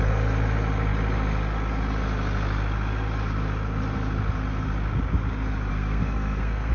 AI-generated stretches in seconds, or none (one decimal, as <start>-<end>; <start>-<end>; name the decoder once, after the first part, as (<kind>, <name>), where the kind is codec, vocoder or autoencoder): 5.7-6.7 (codec, SNAC)